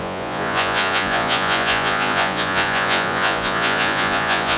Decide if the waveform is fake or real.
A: fake